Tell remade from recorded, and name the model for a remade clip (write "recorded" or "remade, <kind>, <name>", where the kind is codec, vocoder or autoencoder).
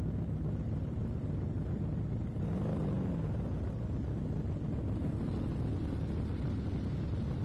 recorded